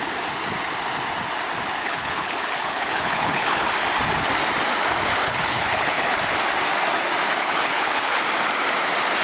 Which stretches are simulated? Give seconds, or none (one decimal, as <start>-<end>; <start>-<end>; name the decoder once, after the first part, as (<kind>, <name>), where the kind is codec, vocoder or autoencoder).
1.8-3.7 (codec, HILCodec); 5.2-6.2; 7.4-8.2